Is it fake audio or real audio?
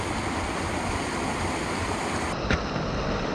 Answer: real